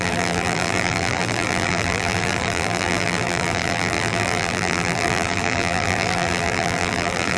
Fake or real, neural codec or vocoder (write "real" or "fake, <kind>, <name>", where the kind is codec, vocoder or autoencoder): fake, vocoder, BigVGAN v2